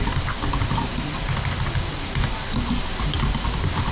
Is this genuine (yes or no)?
yes